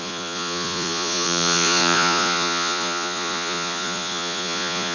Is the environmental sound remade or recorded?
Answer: remade